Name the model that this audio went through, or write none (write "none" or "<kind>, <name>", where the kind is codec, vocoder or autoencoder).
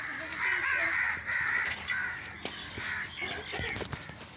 none